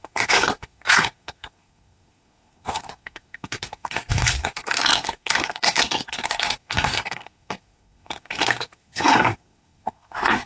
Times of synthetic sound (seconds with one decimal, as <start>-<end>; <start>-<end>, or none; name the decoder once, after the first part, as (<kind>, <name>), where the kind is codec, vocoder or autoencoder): 0.0-10.5 (codec, SNAC)